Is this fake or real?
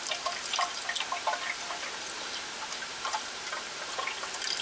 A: real